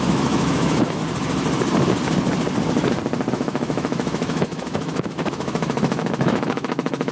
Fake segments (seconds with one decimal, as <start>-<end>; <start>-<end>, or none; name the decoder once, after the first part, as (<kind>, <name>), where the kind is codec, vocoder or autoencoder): 0.0-1.0 (autoencoder, DAC-VAE); 3.3-7.1